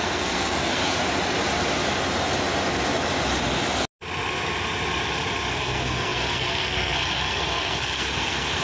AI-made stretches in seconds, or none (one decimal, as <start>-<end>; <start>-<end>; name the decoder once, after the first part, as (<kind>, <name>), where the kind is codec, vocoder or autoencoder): 0.0-0.8 (codec, SNAC); 5.5-8.6